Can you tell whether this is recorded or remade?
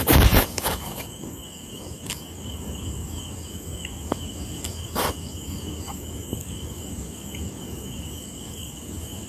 remade